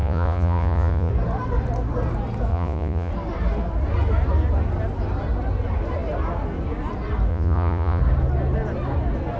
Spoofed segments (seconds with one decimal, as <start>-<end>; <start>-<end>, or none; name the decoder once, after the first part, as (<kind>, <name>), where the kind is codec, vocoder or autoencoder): 0.0-1.1 (vocoder, Vocos); 2.5-3.1; 7.3-8.0

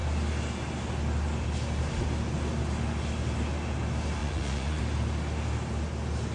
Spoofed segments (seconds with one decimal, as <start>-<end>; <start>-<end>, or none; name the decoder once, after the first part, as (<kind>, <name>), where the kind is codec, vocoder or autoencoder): 4.2-4.8 (vocoder, Vocos)

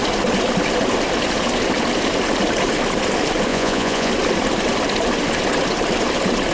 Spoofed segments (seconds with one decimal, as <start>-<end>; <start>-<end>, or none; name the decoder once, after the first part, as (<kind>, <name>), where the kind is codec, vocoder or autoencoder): 3.5-4.1 (vocoder, Vocos)

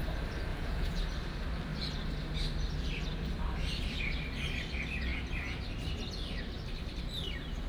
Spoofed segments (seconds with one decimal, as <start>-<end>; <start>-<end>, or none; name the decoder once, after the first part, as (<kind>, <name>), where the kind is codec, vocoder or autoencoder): 0.5-1.0 (vocoder, Vocos)